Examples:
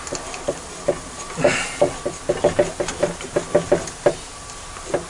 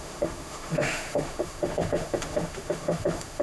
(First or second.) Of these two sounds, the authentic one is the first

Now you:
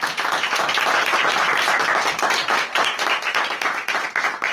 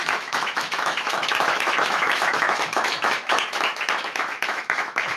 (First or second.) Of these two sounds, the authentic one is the first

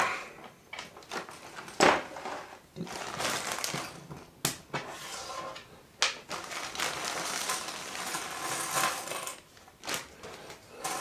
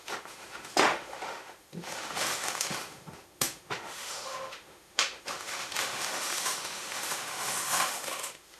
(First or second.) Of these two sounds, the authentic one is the first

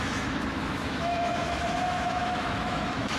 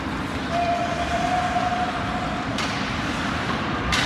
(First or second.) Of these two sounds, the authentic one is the second